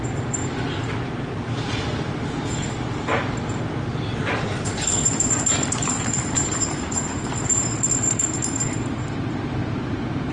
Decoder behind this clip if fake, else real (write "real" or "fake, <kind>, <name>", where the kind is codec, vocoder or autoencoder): fake, vocoder, BigVGAN v2